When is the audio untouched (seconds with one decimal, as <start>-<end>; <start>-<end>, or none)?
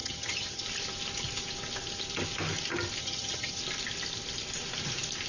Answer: 0.6-3.0; 3.6-5.3